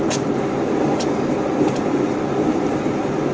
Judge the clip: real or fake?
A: real